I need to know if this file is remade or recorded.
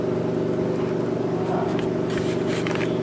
recorded